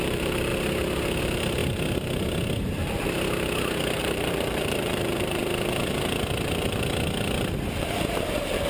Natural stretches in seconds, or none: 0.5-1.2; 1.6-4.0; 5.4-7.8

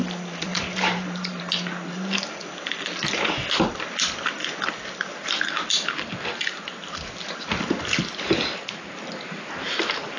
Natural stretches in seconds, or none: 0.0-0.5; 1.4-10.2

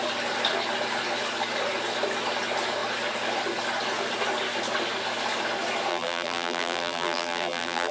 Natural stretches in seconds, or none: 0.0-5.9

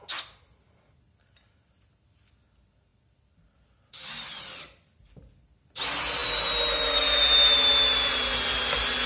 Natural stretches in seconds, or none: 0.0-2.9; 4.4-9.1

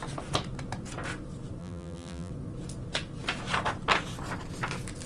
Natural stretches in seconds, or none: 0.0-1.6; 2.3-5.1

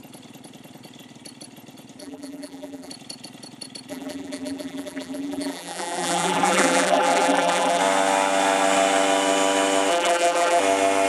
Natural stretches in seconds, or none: 0.0-2.0; 2.9-3.9; 7.8-9.9; 10.6-11.1

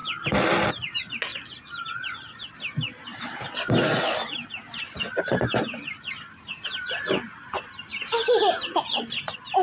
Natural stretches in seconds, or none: 0.7-1.3; 3.5-9.6

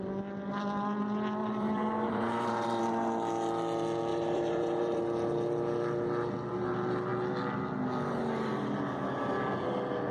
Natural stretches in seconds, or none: 0.0-1.4; 2.8-4.1; 5.0-10.1